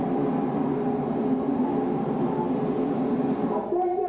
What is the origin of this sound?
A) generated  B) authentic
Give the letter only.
B